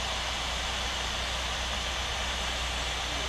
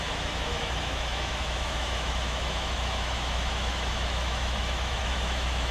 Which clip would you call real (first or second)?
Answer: first